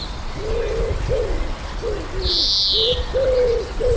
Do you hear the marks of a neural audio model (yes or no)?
no